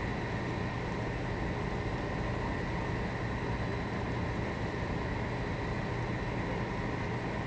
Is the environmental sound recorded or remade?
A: recorded